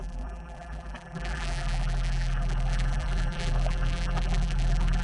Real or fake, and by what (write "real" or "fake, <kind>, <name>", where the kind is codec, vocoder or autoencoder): fake, vocoder, BigVGAN v2